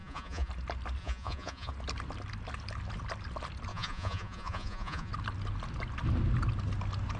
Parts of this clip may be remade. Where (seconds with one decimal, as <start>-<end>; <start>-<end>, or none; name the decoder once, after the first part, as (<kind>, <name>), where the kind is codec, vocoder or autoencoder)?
0.0-0.5 (vocoder, Vocos); 1.0-1.7; 3.7-5.1